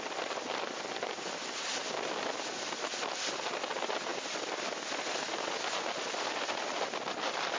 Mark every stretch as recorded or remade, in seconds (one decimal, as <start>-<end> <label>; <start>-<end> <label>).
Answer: 0.0-7.6 recorded